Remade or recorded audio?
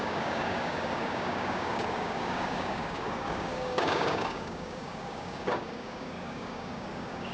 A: remade